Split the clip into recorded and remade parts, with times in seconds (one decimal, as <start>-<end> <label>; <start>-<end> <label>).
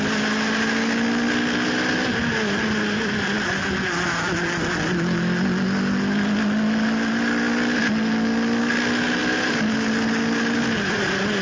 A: 0.0-11.4 recorded